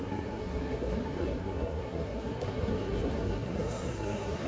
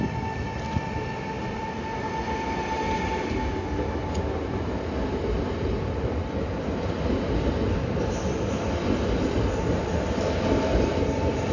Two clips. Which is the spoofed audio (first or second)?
first